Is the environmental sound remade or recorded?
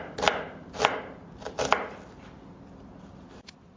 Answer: recorded